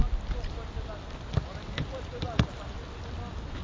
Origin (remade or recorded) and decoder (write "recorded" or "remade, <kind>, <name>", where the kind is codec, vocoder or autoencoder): recorded